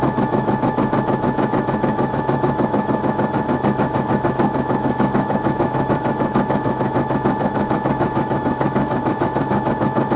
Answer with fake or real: fake